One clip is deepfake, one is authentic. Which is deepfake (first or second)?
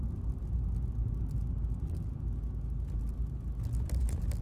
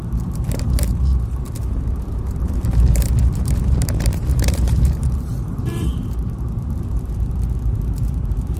second